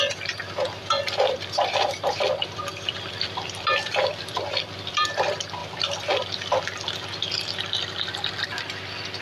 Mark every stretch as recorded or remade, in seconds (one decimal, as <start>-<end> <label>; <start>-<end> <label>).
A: 0.0-5.1 remade; 5.1-5.6 recorded; 5.6-7.1 remade; 7.1-9.2 recorded